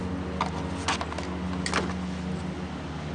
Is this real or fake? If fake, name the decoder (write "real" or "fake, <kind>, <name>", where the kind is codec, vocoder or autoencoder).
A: real